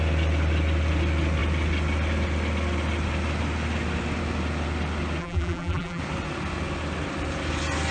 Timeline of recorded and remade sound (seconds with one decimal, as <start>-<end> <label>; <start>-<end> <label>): 0.0-5.2 recorded; 5.2-6.0 remade; 6.0-7.9 recorded